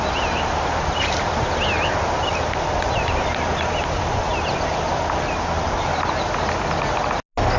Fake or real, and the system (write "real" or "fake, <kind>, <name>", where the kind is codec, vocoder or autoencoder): real